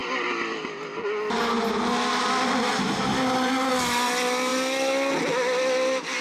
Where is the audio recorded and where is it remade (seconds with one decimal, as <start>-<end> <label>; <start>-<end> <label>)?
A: 0.0-6.2 recorded